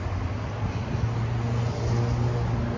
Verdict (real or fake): real